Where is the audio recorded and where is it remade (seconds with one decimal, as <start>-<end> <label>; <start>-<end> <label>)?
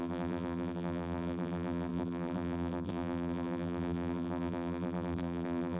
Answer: 0.0-5.8 remade